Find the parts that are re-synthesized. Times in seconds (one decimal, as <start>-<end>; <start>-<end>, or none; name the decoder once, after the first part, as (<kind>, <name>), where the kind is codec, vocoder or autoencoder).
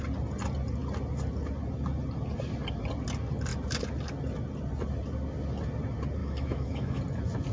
6.2-7.0 (autoencoder, DAC-VAE)